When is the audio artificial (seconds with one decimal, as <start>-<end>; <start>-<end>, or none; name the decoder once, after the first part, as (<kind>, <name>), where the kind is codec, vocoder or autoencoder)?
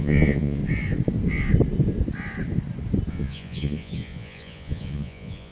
0.0-0.6 (vocoder, Vocos); 3.1-5.5